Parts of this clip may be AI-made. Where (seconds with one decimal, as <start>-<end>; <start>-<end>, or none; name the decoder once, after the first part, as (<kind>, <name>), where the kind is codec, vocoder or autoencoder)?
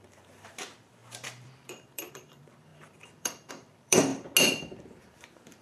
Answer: 0.0-4.1 (vocoder, BigVGAN v2); 5.0-5.6